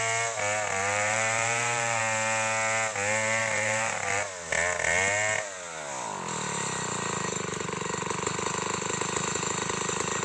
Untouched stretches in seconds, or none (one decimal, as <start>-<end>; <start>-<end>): 0.0-0.8; 2.0-3.4; 4.2-10.2